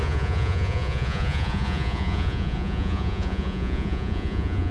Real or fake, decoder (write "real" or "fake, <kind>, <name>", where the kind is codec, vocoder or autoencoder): fake, vocoder, Vocos